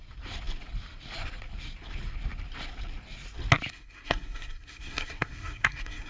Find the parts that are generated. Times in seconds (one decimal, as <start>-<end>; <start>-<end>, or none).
3.7-6.1

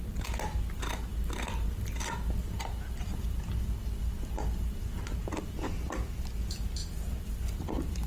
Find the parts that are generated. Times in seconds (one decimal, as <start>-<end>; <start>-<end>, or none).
none

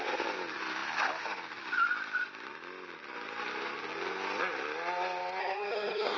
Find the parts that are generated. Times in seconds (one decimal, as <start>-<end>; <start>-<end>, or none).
5.4-6.2

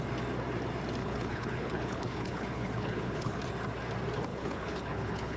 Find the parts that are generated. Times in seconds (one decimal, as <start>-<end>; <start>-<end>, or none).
1.0-3.4; 4.3-5.4

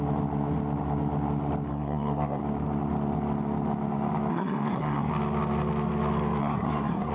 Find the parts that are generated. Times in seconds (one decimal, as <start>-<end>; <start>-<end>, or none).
1.7-2.4; 4.3-5.1; 6.4-7.1